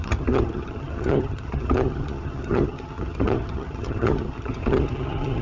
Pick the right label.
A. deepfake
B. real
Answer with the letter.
A